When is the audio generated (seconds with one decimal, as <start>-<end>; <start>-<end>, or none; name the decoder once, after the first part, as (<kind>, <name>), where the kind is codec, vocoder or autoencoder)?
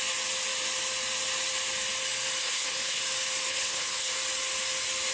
2.4-3.0 (codec, HILCodec); 3.5-4.1